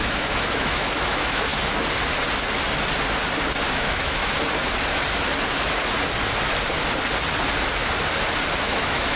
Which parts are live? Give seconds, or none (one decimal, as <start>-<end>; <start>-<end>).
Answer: 1.5-3.7; 4.2-8.6